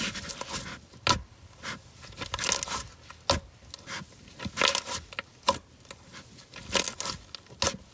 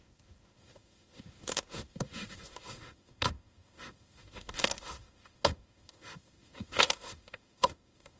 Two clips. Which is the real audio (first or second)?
first